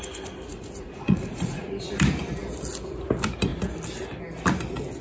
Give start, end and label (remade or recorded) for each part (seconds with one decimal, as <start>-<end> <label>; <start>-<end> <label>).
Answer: 0.0-0.5 recorded; 0.5-1.7 remade; 1.7-5.0 recorded